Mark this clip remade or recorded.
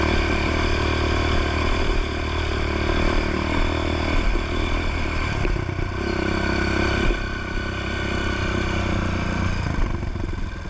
recorded